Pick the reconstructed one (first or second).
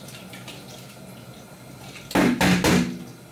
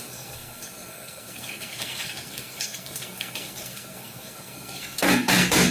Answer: second